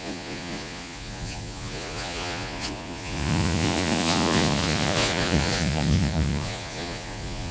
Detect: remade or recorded remade